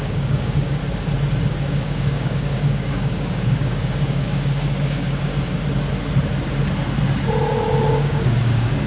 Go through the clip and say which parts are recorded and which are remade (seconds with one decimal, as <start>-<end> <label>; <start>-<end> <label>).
0.0-0.8 remade; 0.8-1.5 recorded; 1.5-5.3 remade; 5.3-7.9 recorded; 7.9-8.9 remade